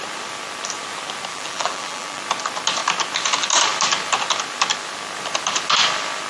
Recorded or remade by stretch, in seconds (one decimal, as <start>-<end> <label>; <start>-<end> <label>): 0.0-1.3 recorded; 1.3-2.2 remade; 2.2-6.3 recorded